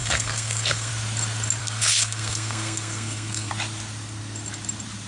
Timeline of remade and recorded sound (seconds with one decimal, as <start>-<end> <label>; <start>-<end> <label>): 0.0-0.9 remade; 0.9-1.6 recorded; 1.6-3.5 remade; 3.5-5.1 recorded